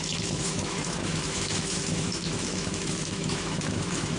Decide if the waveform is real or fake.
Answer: fake